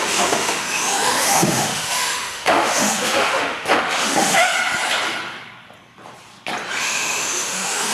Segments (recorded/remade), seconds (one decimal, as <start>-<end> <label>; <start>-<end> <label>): 0.0-4.5 remade; 4.5-6.8 recorded; 6.8-7.9 remade